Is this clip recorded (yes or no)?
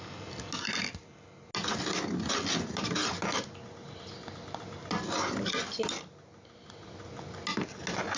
yes